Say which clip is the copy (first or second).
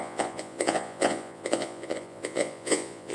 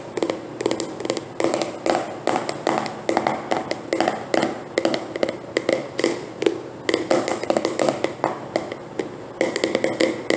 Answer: first